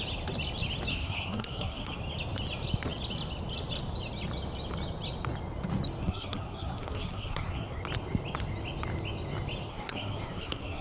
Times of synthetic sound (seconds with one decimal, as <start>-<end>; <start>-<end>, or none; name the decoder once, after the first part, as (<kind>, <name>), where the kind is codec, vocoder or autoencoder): 0.9-2.0 (codec, SNAC); 6.0-7.8; 9.7-10.8